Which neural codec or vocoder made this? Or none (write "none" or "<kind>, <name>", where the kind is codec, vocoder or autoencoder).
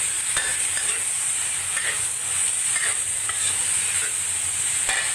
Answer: none